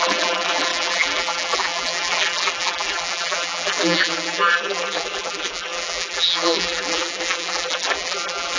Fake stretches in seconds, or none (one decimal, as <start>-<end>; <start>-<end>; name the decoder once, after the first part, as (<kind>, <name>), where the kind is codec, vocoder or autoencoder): 0.0-8.6 (vocoder, BigVGAN v2)